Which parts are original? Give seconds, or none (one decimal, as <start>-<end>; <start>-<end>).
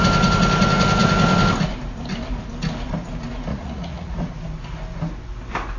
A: 0.0-3.5; 4.3-5.8